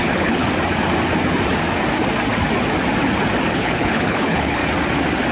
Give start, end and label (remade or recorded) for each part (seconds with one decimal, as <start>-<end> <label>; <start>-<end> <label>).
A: 0.0-0.4 remade; 0.4-3.5 recorded; 3.5-4.6 remade; 4.6-5.3 recorded